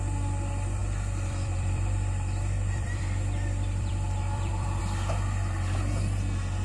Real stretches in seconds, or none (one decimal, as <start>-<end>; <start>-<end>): 0.0-0.8; 4.8-6.6